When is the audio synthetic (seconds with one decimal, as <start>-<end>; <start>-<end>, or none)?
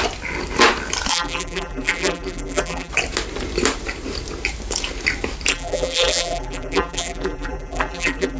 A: 1.1-2.9; 5.5-8.4